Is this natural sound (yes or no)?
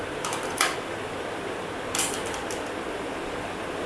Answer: no